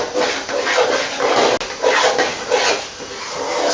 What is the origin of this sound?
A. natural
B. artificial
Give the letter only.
A